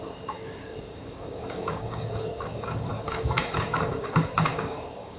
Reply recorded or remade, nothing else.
remade